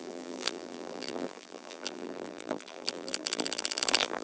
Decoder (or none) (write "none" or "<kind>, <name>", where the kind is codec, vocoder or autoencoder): vocoder, BigVGAN v2